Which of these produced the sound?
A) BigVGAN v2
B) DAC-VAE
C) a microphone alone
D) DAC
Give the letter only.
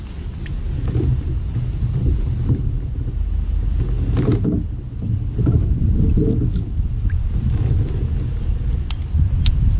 C